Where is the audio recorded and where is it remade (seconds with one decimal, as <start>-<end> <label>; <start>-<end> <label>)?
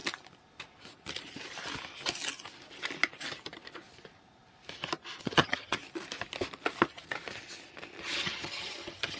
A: 0.0-5.2 recorded; 5.2-5.8 remade; 5.8-8.0 recorded; 8.0-9.2 remade